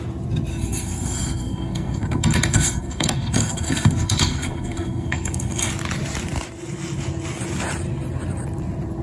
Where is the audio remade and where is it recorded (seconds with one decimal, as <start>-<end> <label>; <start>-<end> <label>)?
0.0-0.5 recorded; 0.5-5.7 remade; 5.7-9.0 recorded